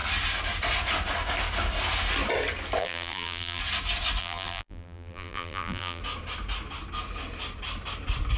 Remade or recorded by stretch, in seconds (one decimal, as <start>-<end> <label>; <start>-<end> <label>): 0.0-2.8 recorded; 2.8-3.6 remade; 3.6-4.2 recorded; 4.2-6.0 remade; 6.0-8.4 recorded